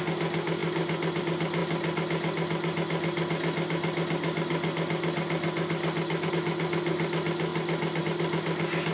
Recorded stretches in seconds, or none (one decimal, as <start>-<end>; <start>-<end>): 0.0-8.9